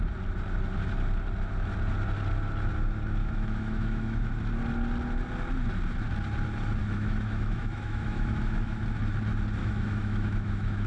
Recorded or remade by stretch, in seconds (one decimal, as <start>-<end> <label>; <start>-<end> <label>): 0.0-3.2 recorded; 3.2-4.3 remade; 4.3-6.8 recorded; 6.8-8.8 remade; 8.8-9.6 recorded; 9.6-10.9 remade